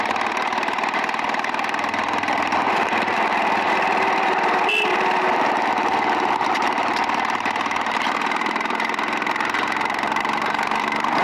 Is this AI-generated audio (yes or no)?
yes